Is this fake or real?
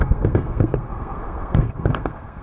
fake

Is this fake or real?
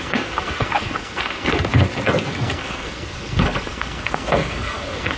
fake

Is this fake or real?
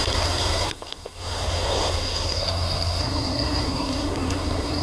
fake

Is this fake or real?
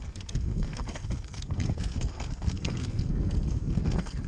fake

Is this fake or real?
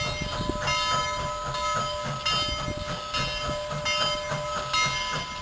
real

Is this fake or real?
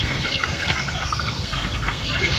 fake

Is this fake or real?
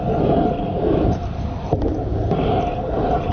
real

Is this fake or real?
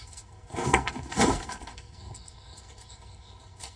fake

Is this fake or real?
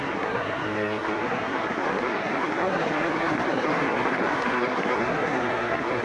fake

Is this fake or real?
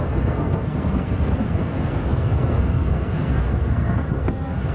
fake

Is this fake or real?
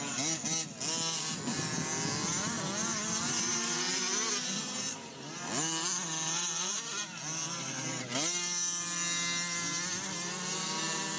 real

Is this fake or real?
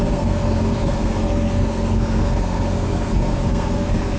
fake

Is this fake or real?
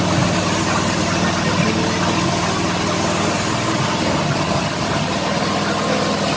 real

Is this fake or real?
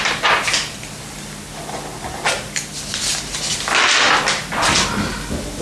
real